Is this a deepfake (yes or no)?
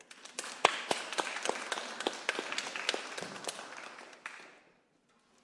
no